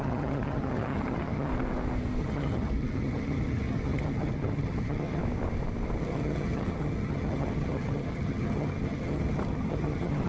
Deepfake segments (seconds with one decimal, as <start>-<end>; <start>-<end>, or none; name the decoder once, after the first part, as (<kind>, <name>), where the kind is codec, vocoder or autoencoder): 0.0-1.5 (vocoder, HiFi-GAN); 2.2-5.2; 6.0-10.3